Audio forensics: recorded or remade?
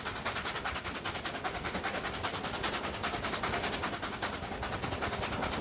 recorded